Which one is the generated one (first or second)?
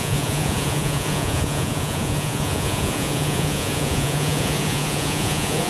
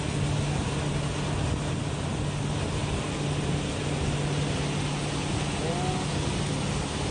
first